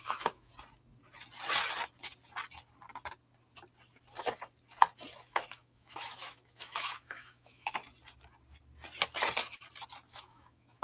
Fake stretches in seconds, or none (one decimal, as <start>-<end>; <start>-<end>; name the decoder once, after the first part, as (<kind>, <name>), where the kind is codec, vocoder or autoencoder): 0.0-0.5 (autoencoder, DAC-VAE); 5.2-7.8; 10.1-10.8

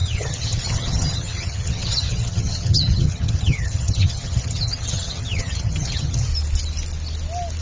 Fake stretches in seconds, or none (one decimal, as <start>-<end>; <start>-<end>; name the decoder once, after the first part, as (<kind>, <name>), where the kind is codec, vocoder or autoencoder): 0.0-6.3 (vocoder, HiFi-GAN)

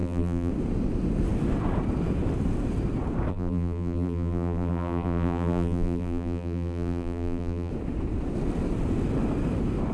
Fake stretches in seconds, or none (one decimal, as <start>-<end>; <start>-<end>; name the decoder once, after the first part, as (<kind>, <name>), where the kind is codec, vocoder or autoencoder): 0.0-0.5 (vocoder, BigVGAN v2); 3.3-7.7

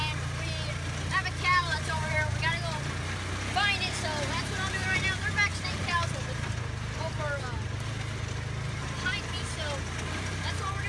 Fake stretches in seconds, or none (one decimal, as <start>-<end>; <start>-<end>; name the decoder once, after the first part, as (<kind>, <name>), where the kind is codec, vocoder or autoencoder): 5.5-7.2 (vocoder, BigVGAN v2)